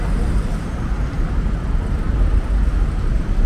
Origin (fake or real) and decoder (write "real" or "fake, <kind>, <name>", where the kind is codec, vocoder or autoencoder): real